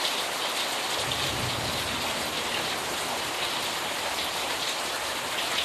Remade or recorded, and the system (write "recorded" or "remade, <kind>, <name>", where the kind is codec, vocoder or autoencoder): recorded